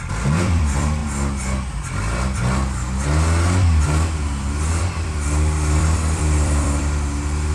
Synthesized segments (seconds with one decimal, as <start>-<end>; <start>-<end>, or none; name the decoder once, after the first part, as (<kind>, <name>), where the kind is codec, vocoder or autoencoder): 0.0-1.0 (vocoder, BigVGAN v2); 4.8-7.5